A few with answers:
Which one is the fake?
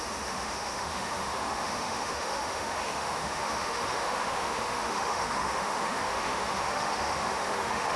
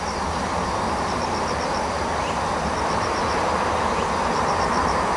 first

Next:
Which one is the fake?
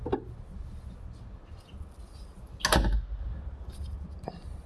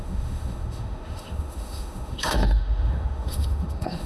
second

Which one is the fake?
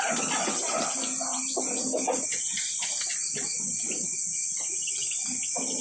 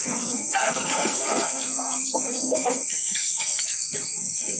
second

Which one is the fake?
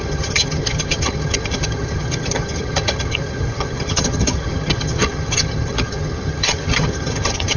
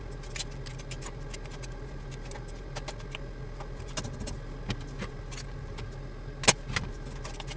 first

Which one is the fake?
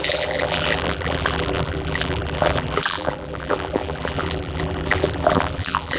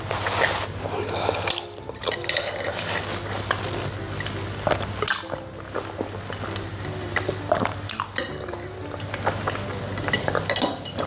first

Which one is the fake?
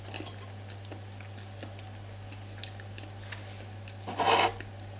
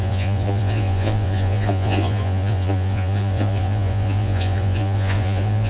second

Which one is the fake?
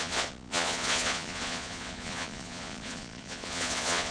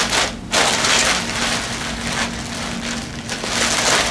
first